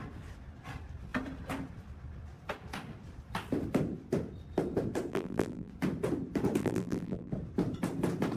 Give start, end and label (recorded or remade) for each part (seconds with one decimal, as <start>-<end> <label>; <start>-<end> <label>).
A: 0.0-5.1 recorded; 5.1-5.7 remade; 5.7-6.6 recorded; 6.6-7.3 remade; 7.3-8.4 recorded